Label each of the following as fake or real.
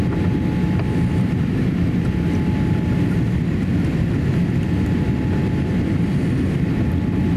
real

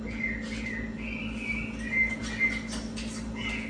real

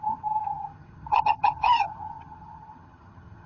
fake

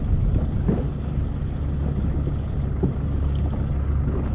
real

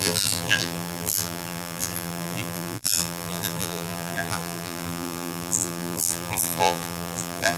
fake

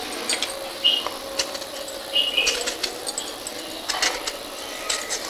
real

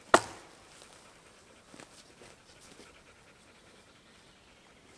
real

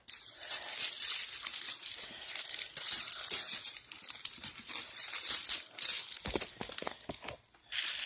real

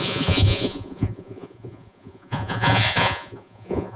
fake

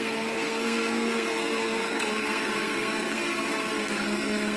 fake